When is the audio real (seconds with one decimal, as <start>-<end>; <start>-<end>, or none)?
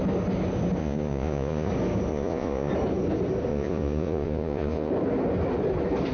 0.0-0.8; 1.7-2.1; 2.7-3.5; 4.9-6.1